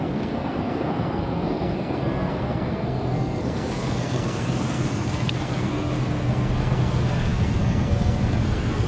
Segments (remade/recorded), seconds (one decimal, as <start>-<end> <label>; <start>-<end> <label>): 0.0-8.9 remade